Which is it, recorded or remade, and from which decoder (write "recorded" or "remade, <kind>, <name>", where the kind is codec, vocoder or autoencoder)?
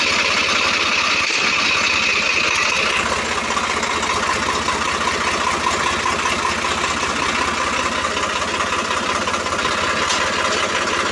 recorded